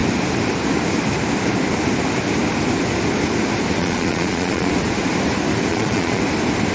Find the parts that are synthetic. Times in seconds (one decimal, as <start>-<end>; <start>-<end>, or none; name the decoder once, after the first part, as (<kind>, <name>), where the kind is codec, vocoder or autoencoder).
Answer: 3.8-4.7 (vocoder, Vocos); 5.7-6.2